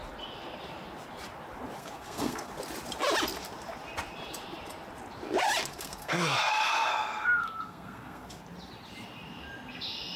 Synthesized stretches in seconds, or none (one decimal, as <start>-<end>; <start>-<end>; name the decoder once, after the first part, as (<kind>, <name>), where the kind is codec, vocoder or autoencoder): 1.8-2.5 (codec, SNAC); 5.7-8.4